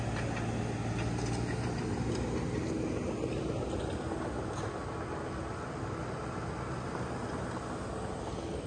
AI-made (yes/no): no